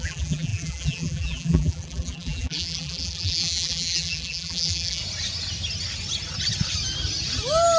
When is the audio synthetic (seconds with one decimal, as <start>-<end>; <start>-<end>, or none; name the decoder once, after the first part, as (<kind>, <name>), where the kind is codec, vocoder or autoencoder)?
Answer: 0.0-5.0 (vocoder, BigVGAN v2)